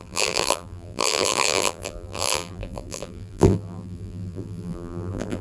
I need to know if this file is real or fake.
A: fake